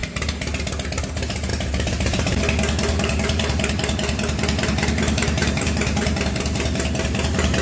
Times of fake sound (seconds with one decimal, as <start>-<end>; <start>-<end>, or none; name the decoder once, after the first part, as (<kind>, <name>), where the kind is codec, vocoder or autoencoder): 1.5-2.4 (vocoder, BigVGAN v2); 2.9-7.6